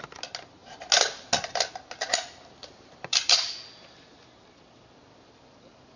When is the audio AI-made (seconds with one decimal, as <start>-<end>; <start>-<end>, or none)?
2.6-3.5